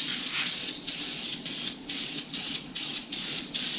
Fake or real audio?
fake